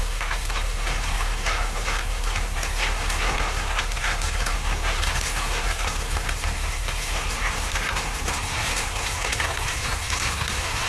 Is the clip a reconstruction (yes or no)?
yes